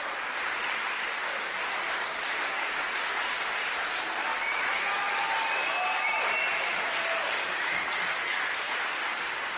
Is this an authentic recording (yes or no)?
yes